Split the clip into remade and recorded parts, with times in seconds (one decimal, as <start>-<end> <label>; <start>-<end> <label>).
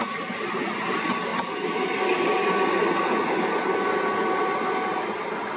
0.0-5.6 recorded